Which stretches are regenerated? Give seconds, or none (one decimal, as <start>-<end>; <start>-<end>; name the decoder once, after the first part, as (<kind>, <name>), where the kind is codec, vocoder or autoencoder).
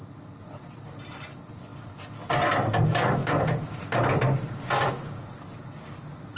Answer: 3.2-4.9 (vocoder, BigVGAN v2)